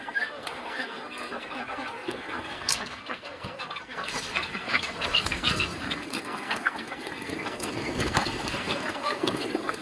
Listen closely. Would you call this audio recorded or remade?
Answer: remade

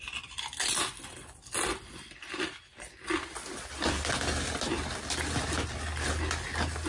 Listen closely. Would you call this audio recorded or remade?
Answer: recorded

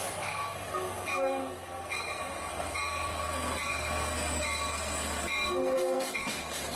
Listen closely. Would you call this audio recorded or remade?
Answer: remade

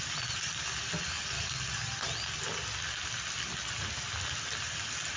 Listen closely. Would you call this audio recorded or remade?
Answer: recorded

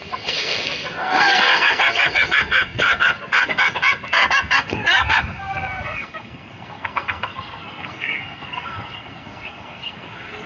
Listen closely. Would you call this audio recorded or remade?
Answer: remade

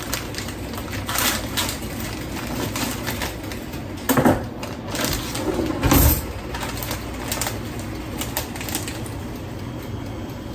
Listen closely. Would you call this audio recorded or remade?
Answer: recorded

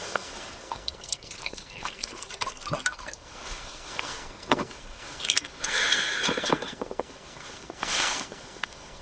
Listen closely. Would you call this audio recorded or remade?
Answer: remade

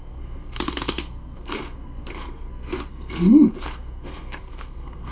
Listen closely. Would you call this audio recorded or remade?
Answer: remade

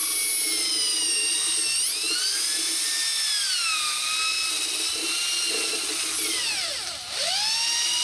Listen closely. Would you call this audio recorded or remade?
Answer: recorded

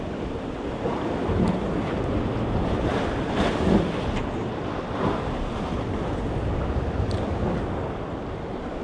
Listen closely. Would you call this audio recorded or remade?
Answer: recorded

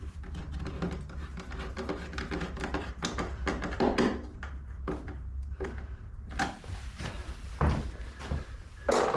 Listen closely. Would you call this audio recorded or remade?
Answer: recorded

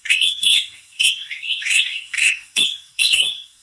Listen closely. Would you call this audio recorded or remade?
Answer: remade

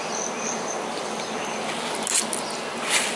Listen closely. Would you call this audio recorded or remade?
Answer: recorded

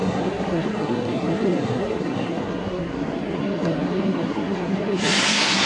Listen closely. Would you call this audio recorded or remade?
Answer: remade